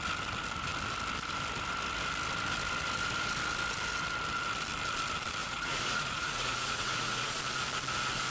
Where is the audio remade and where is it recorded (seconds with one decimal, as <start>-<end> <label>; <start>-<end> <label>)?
0.0-5.4 recorded; 5.4-7.4 remade; 7.4-8.3 recorded